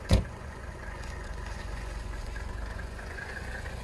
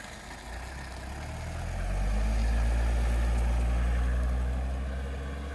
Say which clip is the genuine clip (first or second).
second